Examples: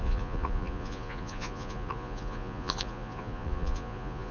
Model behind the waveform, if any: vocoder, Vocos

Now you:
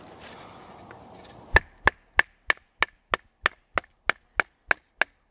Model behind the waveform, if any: none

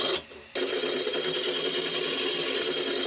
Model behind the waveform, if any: none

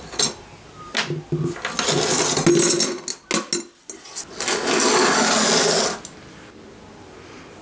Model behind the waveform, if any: none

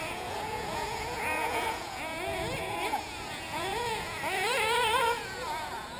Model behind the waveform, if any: vocoder, Vocos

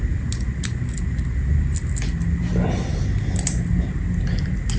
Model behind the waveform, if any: none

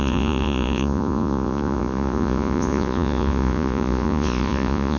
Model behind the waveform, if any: vocoder, Vocos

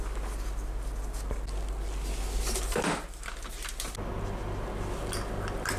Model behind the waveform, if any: none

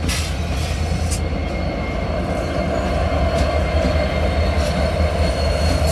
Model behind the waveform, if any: none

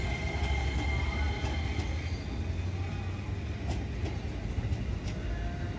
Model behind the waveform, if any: none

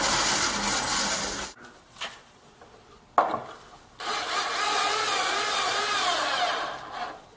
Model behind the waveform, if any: none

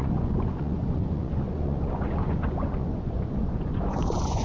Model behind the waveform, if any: vocoder, Vocos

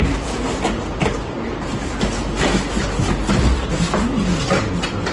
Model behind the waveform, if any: none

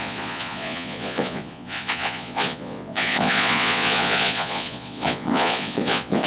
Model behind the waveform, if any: vocoder, Vocos